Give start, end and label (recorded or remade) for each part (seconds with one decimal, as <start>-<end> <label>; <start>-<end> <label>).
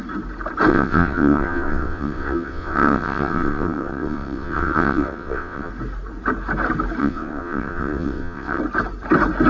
0.0-0.7 recorded; 0.7-5.7 remade; 5.7-7.0 recorded; 7.0-8.6 remade; 8.6-9.5 recorded